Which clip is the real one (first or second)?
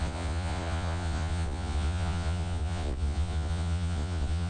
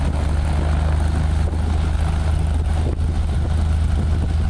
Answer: second